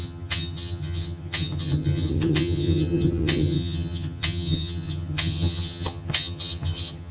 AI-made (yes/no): yes